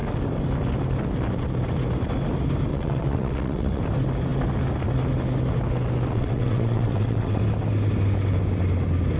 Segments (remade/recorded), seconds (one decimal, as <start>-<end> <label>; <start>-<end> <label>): 0.0-2.7 recorded; 2.7-3.8 remade; 3.8-6.1 recorded; 6.1-7.4 remade; 7.4-9.2 recorded